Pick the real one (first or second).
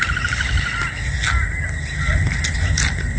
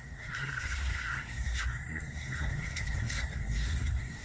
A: first